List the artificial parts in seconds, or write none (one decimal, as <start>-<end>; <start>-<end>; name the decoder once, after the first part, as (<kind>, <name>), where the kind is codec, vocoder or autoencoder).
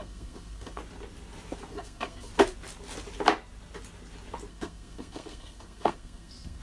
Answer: 0.0-0.8 (codec, SNAC); 1.7-2.3; 4.5-6.6